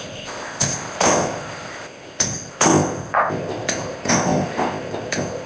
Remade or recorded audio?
remade